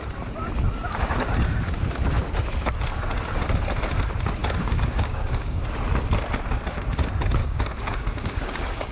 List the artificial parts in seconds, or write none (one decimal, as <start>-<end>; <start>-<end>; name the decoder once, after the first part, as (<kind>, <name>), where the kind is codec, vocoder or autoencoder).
4.4-5.6 (codec, DAC); 7.4-8.9